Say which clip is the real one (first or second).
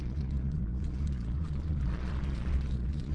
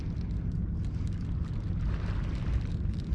second